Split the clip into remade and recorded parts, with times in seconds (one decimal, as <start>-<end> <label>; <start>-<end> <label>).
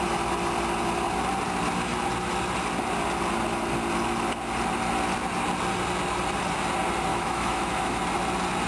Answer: 0.0-7.1 recorded; 7.1-8.0 remade; 8.0-8.7 recorded